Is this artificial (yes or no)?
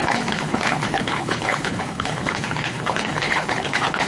yes